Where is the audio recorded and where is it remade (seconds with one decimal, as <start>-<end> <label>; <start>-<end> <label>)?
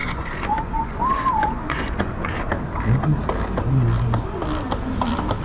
0.0-2.5 remade; 2.5-5.4 recorded